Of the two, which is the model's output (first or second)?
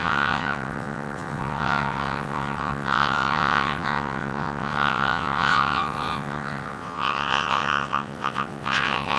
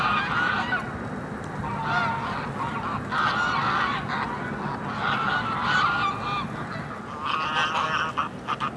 first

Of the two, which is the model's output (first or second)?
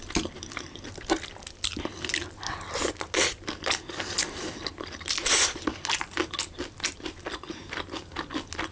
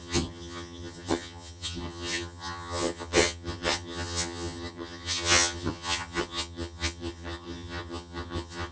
second